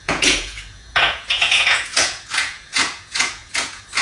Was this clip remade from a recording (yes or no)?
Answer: yes